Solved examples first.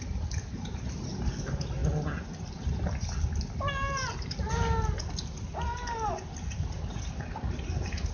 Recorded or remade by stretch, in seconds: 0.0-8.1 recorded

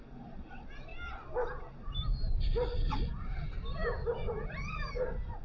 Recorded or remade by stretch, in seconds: 0.0-5.4 recorded

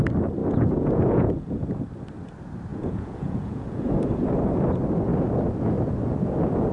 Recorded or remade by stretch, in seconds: 0.0-0.4 recorded; 0.4-1.8 remade; 1.8-2.7 recorded; 2.7-3.9 remade; 3.9-6.7 recorded

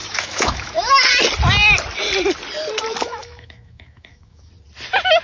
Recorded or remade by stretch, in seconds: 0.0-0.9 remade; 0.9-3.0 recorded; 3.0-4.5 remade; 4.5-5.2 recorded

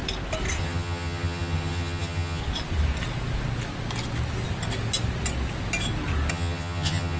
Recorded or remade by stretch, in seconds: 0.0-0.6 recorded; 0.6-2.4 remade; 2.4-6.3 recorded; 6.3-7.2 remade